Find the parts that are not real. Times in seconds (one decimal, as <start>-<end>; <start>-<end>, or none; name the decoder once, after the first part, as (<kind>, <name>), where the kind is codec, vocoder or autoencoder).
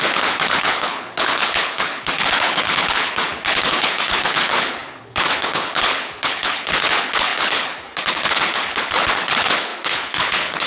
0.0-10.7 (codec, HILCodec)